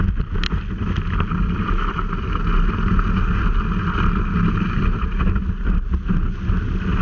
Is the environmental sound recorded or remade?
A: recorded